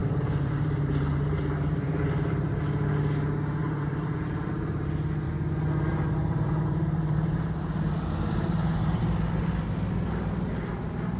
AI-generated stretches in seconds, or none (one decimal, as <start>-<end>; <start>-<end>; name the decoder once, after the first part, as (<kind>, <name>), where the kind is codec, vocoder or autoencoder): 0.0-2.6 (vocoder, BigVGAN v2); 3.6-5.3; 5.9-9.0